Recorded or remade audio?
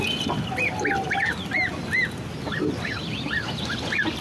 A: recorded